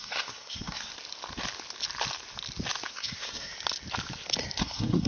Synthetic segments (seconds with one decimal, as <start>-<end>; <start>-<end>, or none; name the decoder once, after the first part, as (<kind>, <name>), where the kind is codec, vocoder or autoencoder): 0.0-0.9 (codec, SNAC); 2.9-3.5; 4.6-5.1